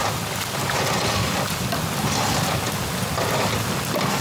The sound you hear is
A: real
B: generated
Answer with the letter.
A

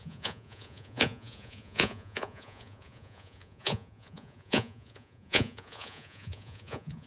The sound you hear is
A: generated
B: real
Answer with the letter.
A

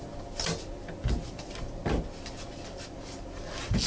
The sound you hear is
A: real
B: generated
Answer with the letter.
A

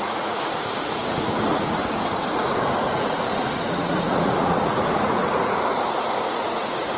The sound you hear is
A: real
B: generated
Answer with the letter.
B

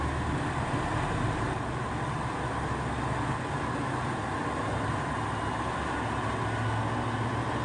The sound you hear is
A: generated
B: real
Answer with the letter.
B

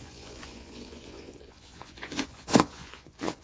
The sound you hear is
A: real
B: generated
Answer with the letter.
B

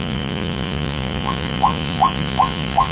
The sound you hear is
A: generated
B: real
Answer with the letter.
A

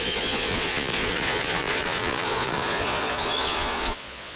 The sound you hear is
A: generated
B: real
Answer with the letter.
A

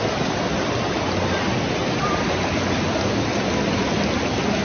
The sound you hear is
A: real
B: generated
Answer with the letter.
A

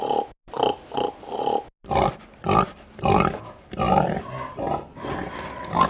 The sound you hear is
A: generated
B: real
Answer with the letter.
B